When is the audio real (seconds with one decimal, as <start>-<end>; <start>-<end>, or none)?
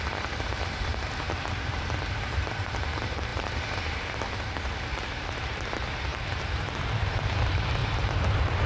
7.8-8.7